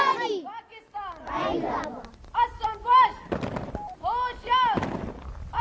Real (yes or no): yes